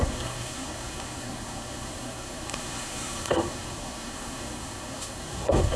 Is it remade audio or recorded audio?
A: remade